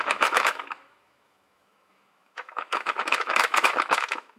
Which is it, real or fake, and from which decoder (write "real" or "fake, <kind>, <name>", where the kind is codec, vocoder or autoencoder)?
fake, autoencoder, DAC-VAE